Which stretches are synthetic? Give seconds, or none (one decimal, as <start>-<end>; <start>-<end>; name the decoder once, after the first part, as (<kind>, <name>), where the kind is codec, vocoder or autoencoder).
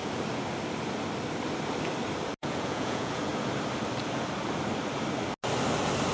2.4-3.3 (vocoder, Vocos)